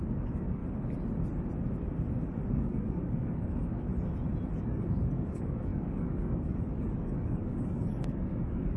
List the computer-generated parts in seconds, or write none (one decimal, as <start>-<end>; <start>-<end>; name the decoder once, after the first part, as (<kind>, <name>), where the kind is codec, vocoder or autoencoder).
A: 0.0-0.6 (codec, DAC); 2.5-3.9; 4.6-8.8